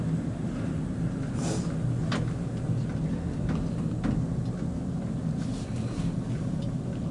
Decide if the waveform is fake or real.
real